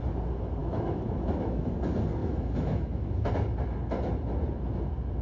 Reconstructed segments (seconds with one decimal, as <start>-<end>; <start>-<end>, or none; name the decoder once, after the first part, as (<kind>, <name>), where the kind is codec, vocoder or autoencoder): 0.6-1.7 (autoencoder, DAC-VAE); 2.2-3.3